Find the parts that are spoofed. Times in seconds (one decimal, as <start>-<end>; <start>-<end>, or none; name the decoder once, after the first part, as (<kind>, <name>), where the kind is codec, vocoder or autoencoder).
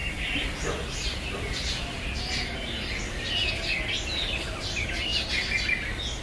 none